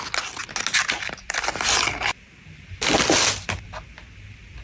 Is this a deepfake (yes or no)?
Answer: no